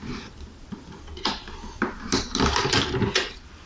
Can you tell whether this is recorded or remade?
recorded